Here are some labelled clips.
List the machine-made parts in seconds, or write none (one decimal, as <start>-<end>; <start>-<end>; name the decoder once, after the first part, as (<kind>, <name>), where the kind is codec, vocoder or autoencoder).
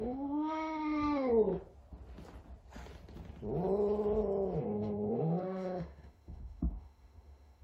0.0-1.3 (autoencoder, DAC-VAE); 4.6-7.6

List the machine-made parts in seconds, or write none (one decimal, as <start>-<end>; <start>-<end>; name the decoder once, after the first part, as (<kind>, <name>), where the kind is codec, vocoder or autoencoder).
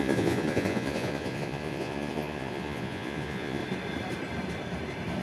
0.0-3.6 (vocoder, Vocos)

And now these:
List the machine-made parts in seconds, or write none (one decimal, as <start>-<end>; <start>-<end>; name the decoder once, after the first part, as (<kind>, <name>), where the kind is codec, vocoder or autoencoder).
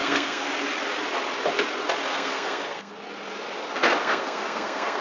0.0-0.5 (codec, SNAC); 2.1-2.9; 4.0-5.0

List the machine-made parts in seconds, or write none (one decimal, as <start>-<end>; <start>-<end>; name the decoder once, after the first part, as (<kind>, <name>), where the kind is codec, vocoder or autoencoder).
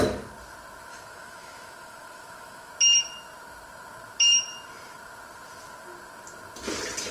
0.9-2.7 (autoencoder, DAC-VAE)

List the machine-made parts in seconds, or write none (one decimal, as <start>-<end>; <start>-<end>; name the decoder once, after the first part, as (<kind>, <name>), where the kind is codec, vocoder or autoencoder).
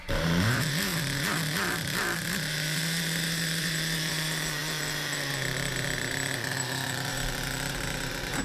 0.0-8.4 (vocoder, BigVGAN v2)